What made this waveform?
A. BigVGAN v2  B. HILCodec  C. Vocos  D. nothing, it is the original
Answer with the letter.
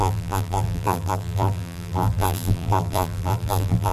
A